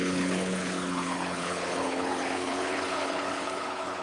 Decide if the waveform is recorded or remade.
remade